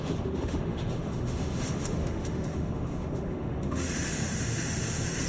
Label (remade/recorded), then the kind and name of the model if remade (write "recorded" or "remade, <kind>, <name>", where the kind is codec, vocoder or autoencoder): remade, autoencoder, DAC-VAE